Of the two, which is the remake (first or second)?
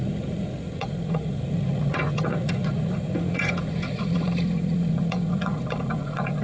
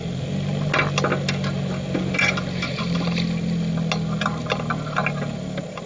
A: first